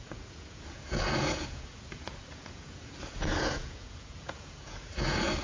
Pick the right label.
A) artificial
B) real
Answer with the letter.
A